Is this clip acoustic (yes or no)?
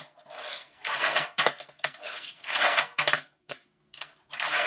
no